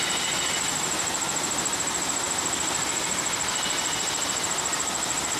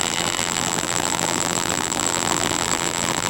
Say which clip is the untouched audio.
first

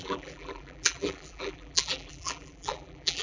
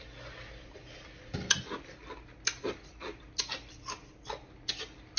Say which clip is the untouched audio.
second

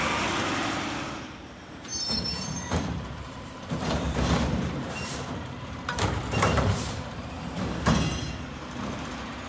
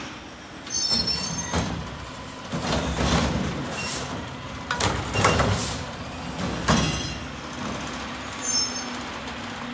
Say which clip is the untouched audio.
second